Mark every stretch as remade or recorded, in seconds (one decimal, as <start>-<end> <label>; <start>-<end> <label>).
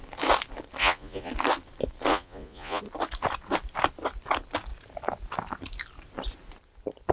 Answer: 0.0-0.8 recorded; 0.8-1.3 remade; 1.3-2.1 recorded; 2.1-2.8 remade; 2.8-7.1 recorded